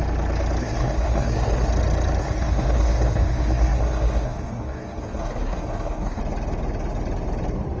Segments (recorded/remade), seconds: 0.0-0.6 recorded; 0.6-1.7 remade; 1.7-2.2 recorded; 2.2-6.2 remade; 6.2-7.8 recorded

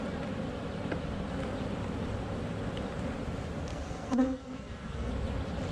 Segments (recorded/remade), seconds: 0.0-3.7 recorded; 3.7-5.1 remade; 5.1-5.7 recorded

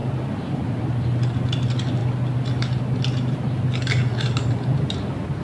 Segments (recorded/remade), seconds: 0.0-5.4 recorded